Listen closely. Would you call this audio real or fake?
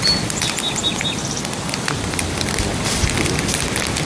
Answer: real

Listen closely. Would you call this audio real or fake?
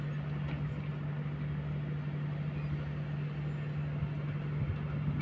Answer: real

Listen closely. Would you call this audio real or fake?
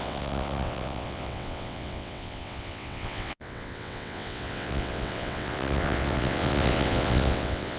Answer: fake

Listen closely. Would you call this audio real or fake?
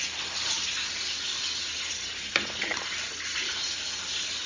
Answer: real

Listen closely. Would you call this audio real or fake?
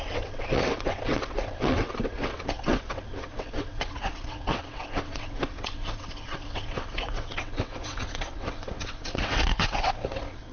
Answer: fake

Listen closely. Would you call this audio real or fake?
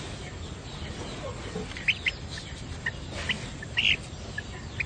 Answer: real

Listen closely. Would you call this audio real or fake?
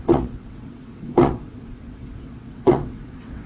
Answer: fake